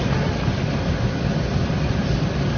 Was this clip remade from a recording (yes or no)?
no